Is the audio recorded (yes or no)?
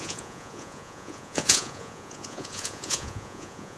no